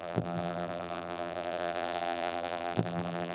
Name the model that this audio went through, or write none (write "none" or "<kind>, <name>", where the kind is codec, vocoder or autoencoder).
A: vocoder, BigVGAN v2